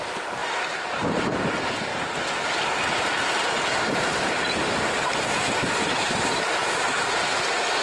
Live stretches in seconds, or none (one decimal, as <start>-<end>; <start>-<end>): 1.9-6.1